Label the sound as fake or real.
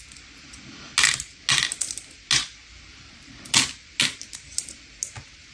real